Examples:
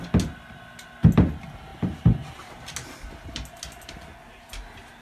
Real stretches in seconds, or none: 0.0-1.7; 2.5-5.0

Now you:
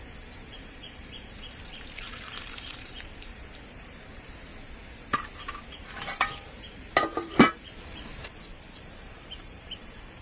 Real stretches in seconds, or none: 4.5-5.8

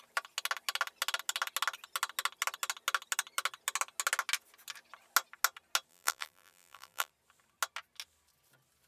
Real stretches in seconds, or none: 0.0-5.9; 7.1-8.9

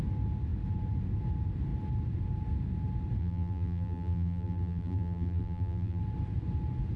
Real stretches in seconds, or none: 0.0-3.2; 6.0-7.0

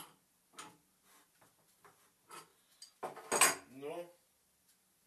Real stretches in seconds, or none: 0.0-5.1

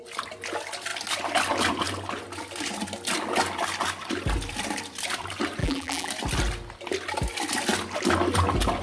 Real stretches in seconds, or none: 0.0-5.6; 6.1-8.8

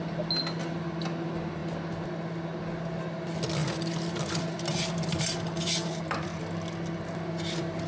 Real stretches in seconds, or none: 0.0-3.6; 6.4-7.9